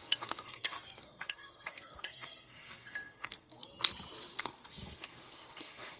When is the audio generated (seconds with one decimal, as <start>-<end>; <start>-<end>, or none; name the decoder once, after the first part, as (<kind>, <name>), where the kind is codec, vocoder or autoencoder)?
0.0-3.6 (codec, SNAC); 4.3-6.0